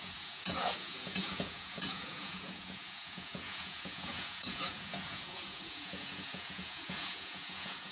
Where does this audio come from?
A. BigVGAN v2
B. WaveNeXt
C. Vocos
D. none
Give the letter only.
C